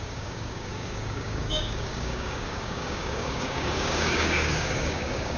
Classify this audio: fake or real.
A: fake